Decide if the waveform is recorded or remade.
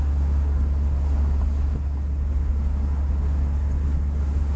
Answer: recorded